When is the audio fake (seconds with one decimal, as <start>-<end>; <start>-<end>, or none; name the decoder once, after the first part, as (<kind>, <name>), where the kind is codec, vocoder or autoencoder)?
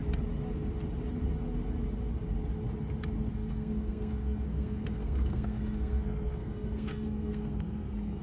3.3-8.2 (codec, SNAC)